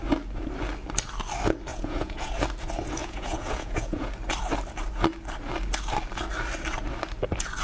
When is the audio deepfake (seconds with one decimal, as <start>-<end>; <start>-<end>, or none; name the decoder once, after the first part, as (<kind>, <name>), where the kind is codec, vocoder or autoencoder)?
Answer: 1.7-2.3 (vocoder, Vocos); 3.0-4.1

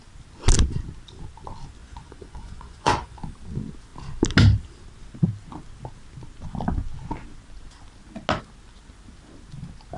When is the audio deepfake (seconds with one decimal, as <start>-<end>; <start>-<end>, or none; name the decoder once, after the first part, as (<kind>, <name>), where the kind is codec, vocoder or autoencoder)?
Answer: 1.8-3.2 (vocoder, Vocos)

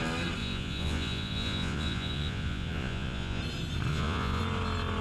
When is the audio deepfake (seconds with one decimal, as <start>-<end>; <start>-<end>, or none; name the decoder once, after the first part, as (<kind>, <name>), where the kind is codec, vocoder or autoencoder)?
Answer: 0.4-3.4 (vocoder, Vocos); 3.9-4.4

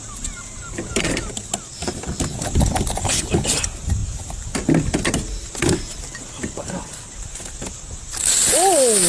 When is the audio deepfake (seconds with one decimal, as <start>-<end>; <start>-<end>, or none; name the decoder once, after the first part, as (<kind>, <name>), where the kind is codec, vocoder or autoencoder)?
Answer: none

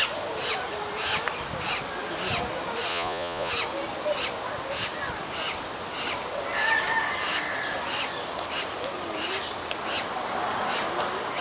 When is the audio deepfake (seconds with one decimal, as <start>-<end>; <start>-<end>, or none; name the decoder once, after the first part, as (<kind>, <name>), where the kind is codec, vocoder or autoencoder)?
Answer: 2.9-3.5 (vocoder, Vocos)

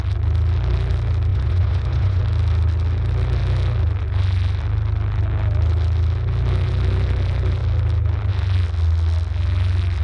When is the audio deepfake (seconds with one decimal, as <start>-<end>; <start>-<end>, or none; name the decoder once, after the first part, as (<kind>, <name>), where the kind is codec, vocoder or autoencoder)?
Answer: 1.3-2.2 (vocoder, Vocos)

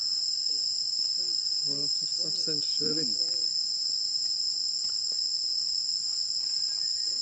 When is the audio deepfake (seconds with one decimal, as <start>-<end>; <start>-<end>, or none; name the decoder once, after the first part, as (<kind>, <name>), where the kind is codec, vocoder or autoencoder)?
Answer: 2.1-5.0 (vocoder, Vocos)